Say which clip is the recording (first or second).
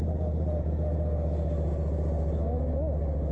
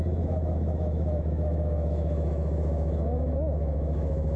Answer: first